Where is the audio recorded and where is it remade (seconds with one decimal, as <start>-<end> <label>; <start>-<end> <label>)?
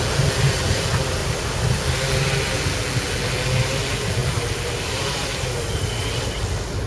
0.0-1.2 recorded; 1.2-1.8 remade; 1.8-4.2 recorded; 4.2-5.9 remade; 5.9-6.9 recorded